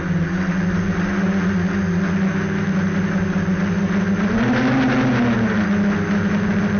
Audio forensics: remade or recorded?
recorded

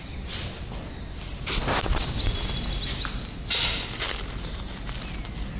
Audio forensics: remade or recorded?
recorded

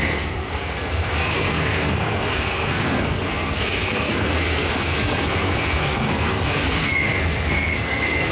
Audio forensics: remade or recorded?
remade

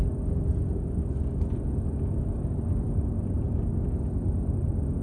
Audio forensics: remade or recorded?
recorded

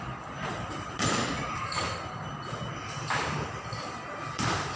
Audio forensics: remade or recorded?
recorded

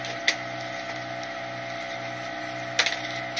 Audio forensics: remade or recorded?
recorded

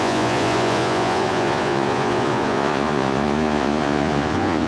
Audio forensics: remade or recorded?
remade